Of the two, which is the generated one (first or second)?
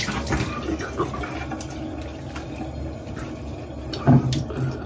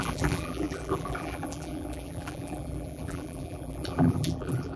second